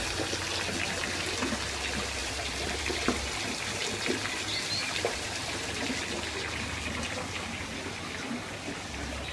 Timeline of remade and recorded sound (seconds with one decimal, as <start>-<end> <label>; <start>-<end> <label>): 0.0-2.2 recorded; 2.2-3.9 remade; 3.9-4.8 recorded; 4.8-5.6 remade; 5.6-9.3 recorded